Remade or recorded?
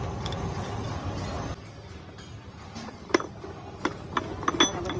recorded